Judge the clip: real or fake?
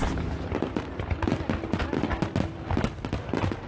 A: real